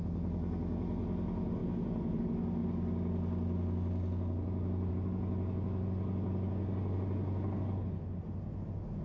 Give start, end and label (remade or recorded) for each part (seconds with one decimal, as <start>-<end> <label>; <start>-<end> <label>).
0.0-1.6 recorded; 1.6-2.2 remade; 2.2-9.0 recorded